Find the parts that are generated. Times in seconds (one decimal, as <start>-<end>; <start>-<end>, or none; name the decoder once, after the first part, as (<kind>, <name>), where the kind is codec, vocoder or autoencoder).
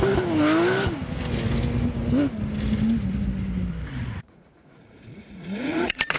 4.0-6.2 (vocoder, Vocos)